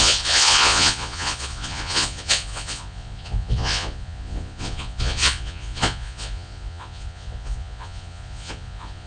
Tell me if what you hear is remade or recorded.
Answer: remade